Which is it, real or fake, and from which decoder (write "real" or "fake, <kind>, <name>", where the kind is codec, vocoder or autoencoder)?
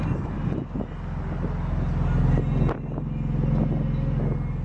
real